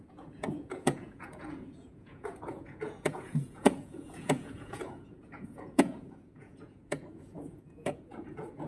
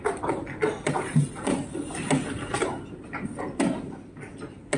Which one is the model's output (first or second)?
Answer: first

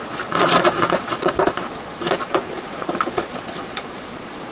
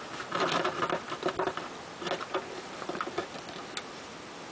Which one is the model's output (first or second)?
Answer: first